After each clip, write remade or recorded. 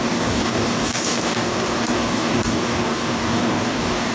remade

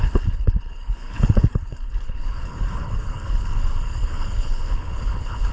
remade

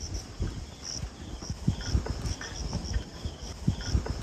recorded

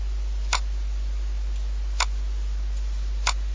recorded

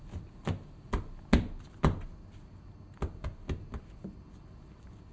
recorded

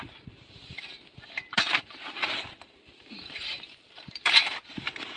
remade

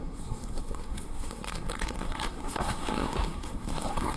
remade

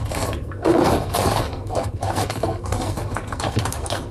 remade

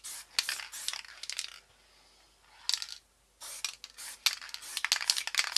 recorded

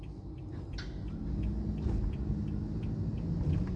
recorded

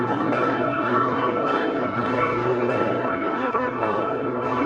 remade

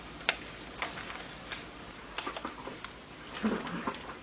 recorded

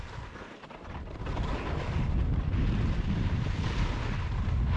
recorded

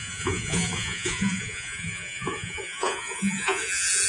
remade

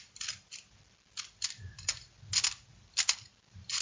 recorded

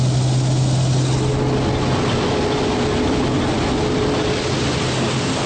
recorded